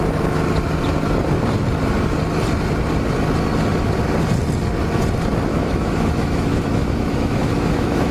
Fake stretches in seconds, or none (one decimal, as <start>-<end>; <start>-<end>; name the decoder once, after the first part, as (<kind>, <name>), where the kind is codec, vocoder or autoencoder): 5.5-8.1 (autoencoder, DAC-VAE)